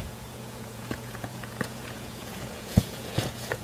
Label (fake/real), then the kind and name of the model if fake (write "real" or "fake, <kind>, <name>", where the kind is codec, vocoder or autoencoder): fake, vocoder, Vocos